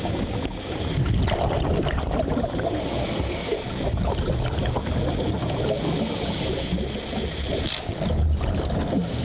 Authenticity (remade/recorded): recorded